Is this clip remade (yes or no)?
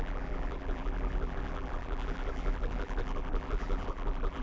yes